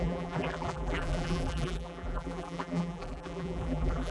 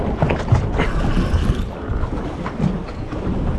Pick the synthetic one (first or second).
first